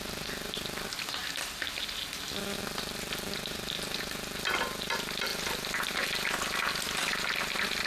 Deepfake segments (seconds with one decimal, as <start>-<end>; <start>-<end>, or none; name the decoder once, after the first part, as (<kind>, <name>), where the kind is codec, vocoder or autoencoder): none